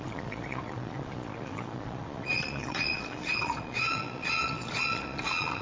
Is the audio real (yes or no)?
no